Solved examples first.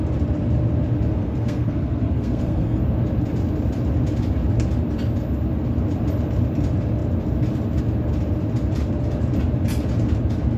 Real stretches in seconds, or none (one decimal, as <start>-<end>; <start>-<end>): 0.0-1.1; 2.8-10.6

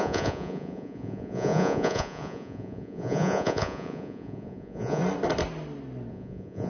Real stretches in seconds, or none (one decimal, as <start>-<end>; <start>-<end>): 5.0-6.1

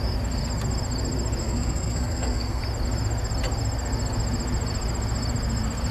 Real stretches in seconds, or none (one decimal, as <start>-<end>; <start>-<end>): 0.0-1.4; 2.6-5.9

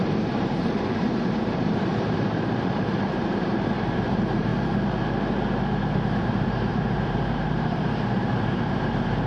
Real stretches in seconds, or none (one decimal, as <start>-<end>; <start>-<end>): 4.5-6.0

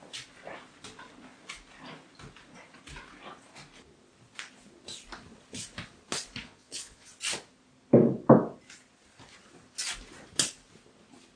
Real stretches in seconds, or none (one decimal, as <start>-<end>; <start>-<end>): 0.0-6.4; 7.1-11.4

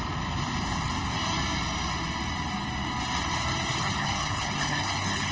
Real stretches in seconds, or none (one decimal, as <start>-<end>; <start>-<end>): 0.0-3.7

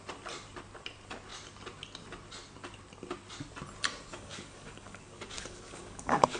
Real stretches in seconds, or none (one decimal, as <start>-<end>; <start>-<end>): 0.0-4.1